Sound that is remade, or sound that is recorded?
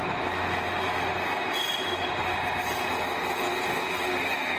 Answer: recorded